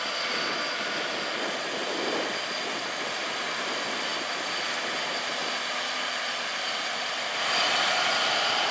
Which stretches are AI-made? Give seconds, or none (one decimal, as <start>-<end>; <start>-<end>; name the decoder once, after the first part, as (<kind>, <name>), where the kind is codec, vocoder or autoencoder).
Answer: 6.5-7.5 (vocoder, BigVGAN v2)